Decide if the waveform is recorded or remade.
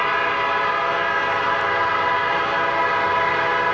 recorded